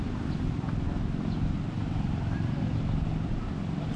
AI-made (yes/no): yes